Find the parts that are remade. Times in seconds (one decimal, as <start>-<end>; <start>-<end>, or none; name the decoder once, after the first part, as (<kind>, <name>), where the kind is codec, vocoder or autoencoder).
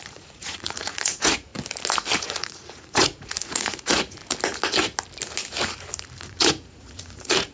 0.0-1.5 (vocoder, Vocos); 2.2-4.2; 6.2-7.5